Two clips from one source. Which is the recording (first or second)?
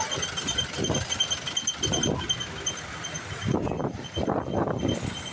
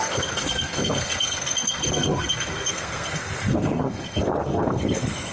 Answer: first